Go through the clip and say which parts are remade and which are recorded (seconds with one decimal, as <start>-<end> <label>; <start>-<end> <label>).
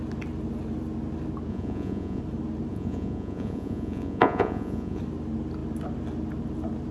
0.0-1.5 recorded; 1.5-2.2 remade; 2.2-2.7 recorded; 2.7-5.0 remade; 5.0-6.9 recorded